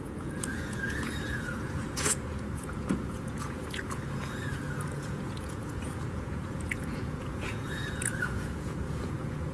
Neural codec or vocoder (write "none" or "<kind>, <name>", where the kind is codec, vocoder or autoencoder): vocoder, Vocos